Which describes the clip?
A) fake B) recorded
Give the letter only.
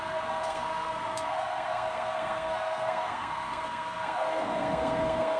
A